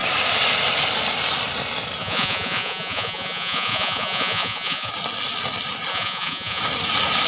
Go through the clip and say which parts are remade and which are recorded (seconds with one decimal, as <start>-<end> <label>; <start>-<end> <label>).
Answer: 0.0-2.0 recorded; 2.0-4.9 remade; 4.9-5.9 recorded; 5.9-6.6 remade; 6.6-7.3 recorded